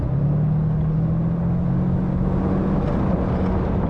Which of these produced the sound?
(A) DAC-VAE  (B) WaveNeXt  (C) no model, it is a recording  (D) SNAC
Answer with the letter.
C